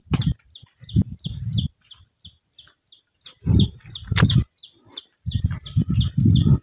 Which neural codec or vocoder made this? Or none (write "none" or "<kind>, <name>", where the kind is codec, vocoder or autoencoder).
none